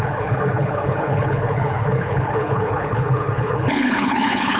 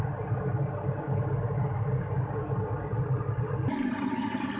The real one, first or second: second